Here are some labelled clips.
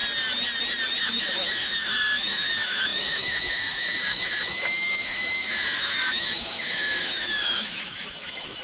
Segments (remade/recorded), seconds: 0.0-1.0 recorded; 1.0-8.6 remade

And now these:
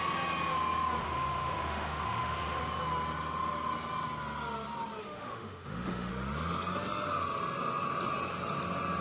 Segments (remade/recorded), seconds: 0.0-1.0 recorded; 1.0-2.6 remade; 2.6-5.0 recorded; 5.0-6.1 remade; 6.1-9.0 recorded

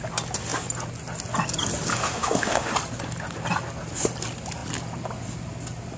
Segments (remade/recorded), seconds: 0.0-1.9 recorded; 1.9-2.7 remade; 2.7-6.0 recorded

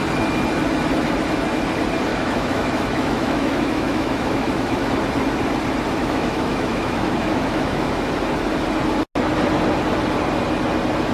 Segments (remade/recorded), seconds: 0.0-2.1 recorded; 2.1-4.9 remade; 4.9-6.0 recorded; 6.0-8.1 remade; 8.1-11.1 recorded